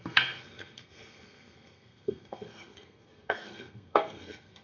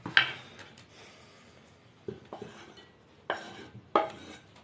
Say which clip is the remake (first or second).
first